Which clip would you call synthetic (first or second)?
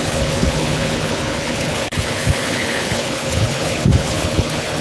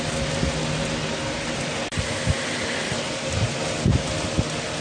first